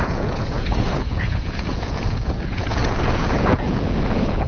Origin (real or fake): fake